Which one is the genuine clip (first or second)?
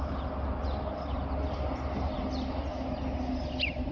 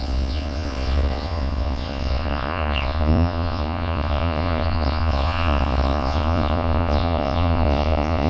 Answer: first